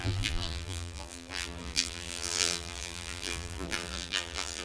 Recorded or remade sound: remade